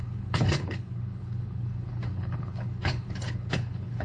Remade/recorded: remade